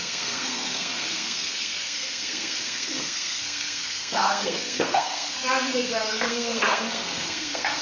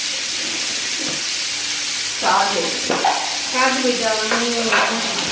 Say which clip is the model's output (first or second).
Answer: first